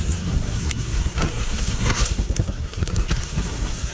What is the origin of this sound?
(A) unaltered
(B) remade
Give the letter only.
B